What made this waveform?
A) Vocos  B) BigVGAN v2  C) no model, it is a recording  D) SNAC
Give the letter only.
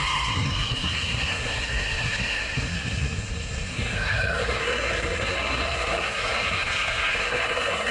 D